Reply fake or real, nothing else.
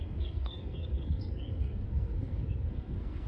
fake